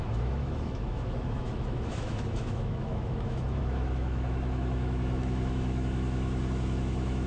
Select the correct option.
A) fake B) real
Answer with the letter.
A